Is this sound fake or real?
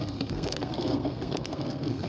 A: fake